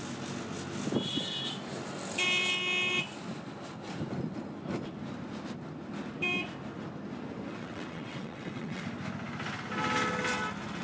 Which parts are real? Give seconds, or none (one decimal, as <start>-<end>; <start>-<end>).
0.0-7.5; 8.8-10.8